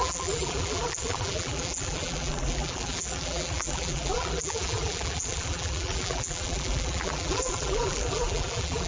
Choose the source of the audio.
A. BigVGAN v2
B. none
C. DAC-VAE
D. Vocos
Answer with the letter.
A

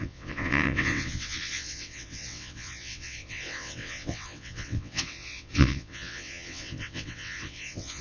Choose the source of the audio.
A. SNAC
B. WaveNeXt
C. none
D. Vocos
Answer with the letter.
B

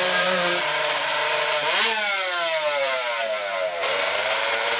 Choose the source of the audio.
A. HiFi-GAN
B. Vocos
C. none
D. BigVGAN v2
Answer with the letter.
D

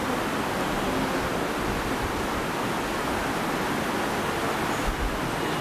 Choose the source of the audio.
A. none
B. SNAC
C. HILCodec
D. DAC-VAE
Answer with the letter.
A